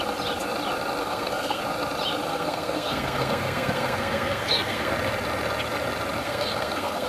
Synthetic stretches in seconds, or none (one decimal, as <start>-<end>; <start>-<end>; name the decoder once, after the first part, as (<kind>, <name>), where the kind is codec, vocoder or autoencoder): 1.0-1.6 (codec, SNAC); 2.3-4.9; 6.2-7.1